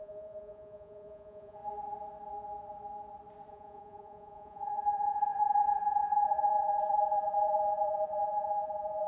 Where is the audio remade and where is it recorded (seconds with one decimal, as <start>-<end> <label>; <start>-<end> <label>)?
0.0-1.6 remade; 1.6-3.5 recorded; 3.5-9.1 remade